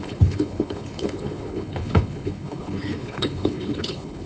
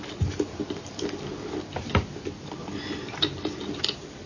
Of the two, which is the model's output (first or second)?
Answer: first